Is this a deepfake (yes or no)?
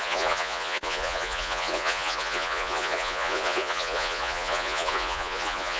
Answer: yes